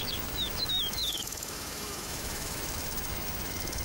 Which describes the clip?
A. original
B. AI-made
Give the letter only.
B